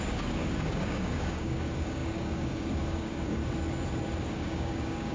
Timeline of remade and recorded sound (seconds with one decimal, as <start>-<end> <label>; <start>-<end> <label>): 0.0-3.4 remade; 3.4-4.2 recorded; 4.2-5.1 remade